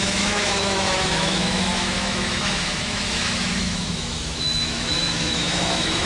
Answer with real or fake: fake